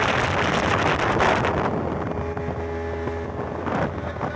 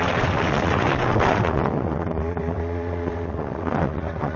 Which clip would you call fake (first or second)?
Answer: second